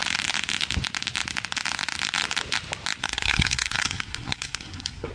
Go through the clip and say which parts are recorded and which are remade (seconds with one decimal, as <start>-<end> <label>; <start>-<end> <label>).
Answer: 0.0-3.0 recorded; 3.0-5.1 remade

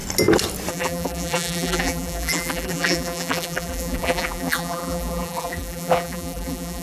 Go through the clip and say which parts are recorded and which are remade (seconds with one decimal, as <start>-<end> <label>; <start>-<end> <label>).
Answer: 0.0-0.7 recorded; 0.7-6.8 remade

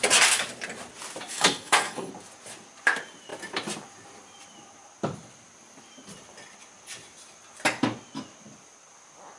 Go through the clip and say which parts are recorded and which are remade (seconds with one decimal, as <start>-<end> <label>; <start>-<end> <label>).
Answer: 0.0-1.3 recorded; 1.3-2.1 remade; 2.1-9.4 recorded

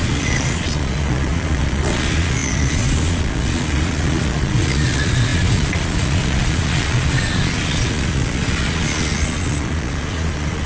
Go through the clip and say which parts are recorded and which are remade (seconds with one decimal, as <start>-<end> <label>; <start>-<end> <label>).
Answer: 0.0-10.7 remade

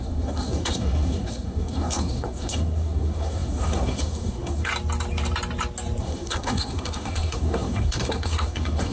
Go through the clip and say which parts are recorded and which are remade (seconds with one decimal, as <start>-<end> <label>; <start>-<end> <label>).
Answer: 0.0-4.7 remade; 4.7-6.0 recorded; 6.0-8.9 remade